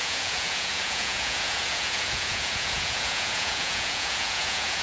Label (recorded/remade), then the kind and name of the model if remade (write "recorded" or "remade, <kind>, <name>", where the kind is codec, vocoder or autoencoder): remade, vocoder, Vocos